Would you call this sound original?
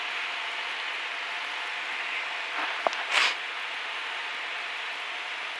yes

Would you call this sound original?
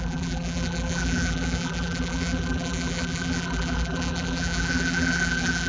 no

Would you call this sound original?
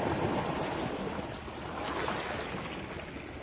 yes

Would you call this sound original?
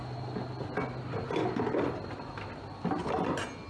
yes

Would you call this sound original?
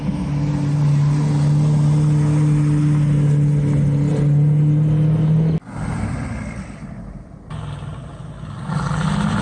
yes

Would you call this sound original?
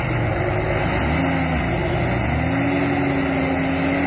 yes